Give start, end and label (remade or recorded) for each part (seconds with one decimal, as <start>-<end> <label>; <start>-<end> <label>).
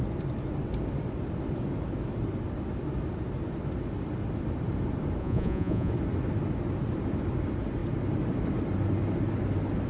0.0-5.2 recorded; 5.2-5.9 remade; 5.9-9.9 recorded